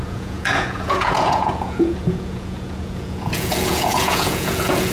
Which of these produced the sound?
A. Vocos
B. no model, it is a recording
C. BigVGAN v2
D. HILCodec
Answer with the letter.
A